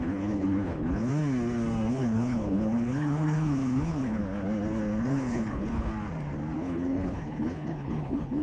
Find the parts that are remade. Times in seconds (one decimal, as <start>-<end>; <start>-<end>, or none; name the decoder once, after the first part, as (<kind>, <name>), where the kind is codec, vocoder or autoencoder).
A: 0.0-1.1 (codec, HILCodec); 1.9-4.2; 5.0-5.9; 6.6-8.4